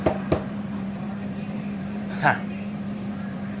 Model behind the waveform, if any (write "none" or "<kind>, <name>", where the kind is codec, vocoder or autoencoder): vocoder, BigVGAN v2